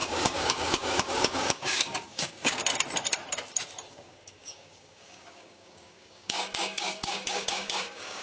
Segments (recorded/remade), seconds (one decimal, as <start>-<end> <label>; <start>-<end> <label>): 0.0-2.6 remade; 2.6-3.9 recorded; 3.9-8.2 remade